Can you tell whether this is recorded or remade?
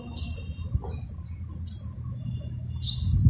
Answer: recorded